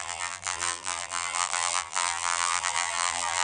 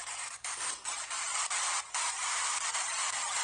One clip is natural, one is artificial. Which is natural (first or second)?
second